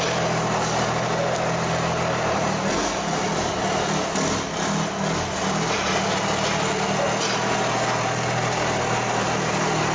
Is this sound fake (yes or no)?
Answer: no